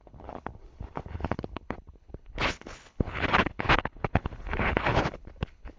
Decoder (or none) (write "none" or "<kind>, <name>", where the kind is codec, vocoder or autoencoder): codec, HILCodec